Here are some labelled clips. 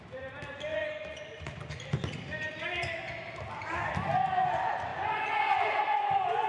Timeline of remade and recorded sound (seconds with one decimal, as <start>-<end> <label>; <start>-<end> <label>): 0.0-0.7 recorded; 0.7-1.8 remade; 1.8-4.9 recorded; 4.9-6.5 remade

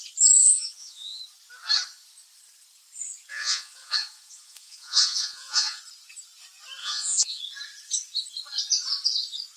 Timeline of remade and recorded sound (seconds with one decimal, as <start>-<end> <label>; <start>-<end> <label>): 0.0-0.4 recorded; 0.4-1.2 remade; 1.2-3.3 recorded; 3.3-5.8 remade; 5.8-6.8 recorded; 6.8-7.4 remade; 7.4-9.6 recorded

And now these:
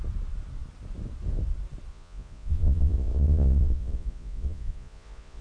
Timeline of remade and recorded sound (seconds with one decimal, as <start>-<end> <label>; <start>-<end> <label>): 0.0-1.9 recorded; 1.9-5.4 remade

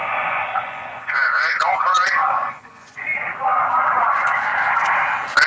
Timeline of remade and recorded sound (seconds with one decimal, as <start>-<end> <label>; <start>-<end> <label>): 0.0-3.1 remade; 3.1-3.8 recorded; 3.8-4.5 remade; 4.5-5.5 recorded